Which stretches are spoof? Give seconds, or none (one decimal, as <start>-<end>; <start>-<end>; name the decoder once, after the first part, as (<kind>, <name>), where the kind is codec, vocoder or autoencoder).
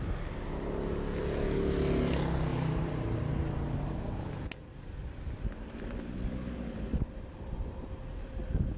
2.5-3.3 (vocoder, BigVGAN v2)